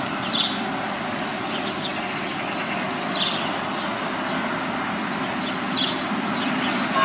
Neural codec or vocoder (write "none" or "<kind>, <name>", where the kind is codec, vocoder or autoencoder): none